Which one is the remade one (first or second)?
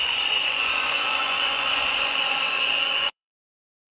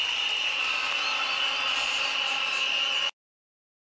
first